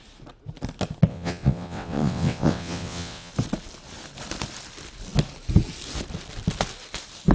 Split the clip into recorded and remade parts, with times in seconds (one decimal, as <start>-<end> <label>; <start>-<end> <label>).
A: 0.0-1.1 recorded; 1.1-3.3 remade; 3.3-7.3 recorded